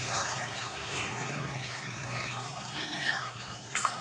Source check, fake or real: fake